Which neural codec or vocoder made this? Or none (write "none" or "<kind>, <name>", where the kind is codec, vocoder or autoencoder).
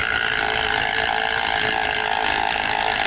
none